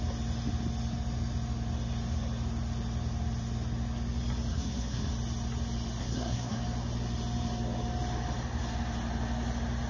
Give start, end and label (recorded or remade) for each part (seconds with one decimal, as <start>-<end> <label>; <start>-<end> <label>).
0.0-4.5 recorded; 4.5-5.1 remade; 5.1-6.0 recorded; 6.0-6.6 remade; 6.6-9.9 recorded